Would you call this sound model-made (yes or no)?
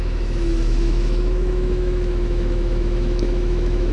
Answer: yes